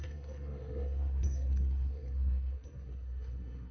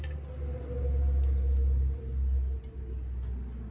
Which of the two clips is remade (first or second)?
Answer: first